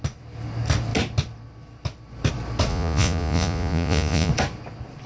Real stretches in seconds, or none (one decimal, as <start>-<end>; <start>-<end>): 0.0-2.7; 4.3-5.1